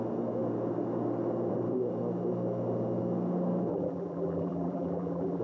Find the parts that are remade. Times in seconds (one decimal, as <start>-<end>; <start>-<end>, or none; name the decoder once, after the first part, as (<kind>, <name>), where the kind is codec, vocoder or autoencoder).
3.7-5.4 (vocoder, BigVGAN v2)